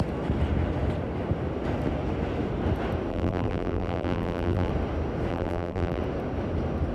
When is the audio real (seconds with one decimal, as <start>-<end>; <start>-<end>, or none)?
0.0-3.1; 4.7-5.3; 6.0-6.9